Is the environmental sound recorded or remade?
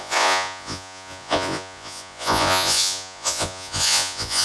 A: remade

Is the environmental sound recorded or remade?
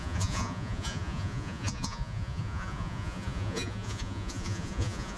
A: remade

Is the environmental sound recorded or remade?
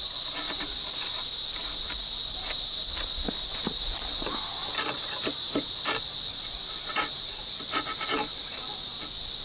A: recorded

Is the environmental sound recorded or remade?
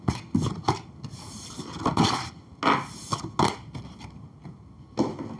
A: recorded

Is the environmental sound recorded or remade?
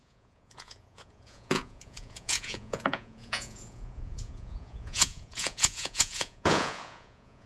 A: remade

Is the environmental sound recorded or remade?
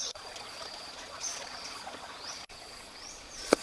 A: remade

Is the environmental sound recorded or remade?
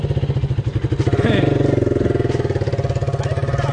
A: recorded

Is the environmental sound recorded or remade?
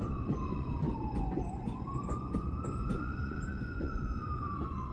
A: remade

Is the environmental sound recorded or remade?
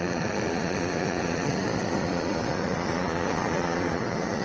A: remade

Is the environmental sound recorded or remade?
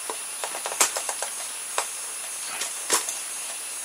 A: recorded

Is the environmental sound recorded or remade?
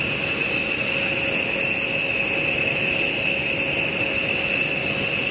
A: recorded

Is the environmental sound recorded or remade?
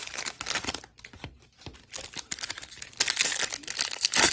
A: recorded